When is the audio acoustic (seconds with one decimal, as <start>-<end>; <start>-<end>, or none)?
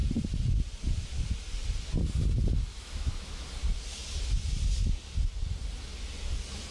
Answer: 0.0-2.7; 3.5-6.7